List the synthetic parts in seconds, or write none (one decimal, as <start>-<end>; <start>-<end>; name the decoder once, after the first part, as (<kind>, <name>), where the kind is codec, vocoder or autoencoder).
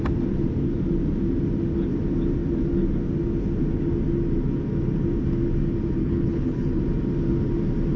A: 6.0-6.8 (codec, HILCodec)